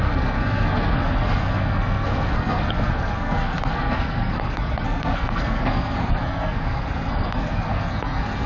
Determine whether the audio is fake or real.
fake